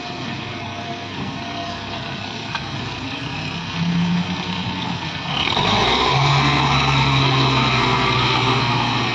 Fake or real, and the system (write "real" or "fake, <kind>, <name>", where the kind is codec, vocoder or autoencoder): fake, codec, SNAC